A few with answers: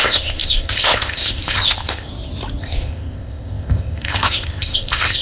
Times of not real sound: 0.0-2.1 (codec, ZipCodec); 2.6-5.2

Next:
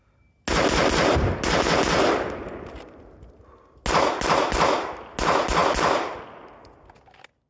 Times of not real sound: none

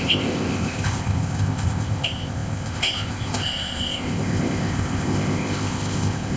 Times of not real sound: 0.0-6.4 (codec, ZipCodec)

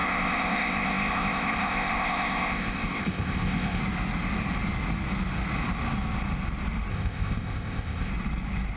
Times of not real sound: 0.0-3.8 (codec, ZipCodec); 6.9-8.1